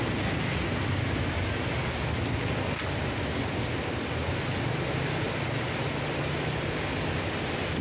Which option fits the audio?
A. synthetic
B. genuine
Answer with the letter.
B